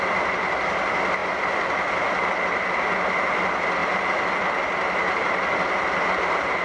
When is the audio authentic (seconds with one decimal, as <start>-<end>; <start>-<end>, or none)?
0.0-6.6